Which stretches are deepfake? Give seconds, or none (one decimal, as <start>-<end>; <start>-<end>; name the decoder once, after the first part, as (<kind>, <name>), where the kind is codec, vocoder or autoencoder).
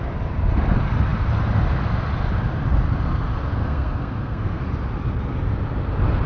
3.6-4.6 (codec, SNAC)